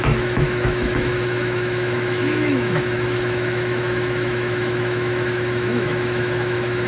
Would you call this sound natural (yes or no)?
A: no